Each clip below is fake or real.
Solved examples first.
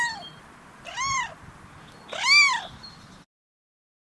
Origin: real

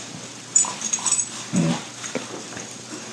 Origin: fake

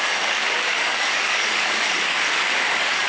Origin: fake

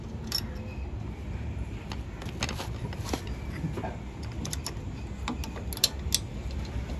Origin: real